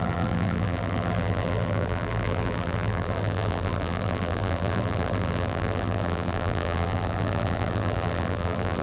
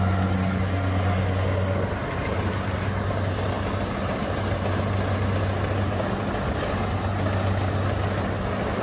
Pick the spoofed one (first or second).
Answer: first